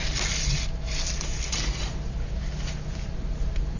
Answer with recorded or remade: recorded